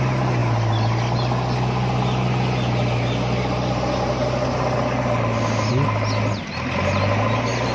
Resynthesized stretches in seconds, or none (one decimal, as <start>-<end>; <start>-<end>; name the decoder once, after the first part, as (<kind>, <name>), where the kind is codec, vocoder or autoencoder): none